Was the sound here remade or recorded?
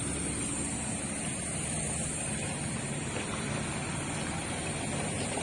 recorded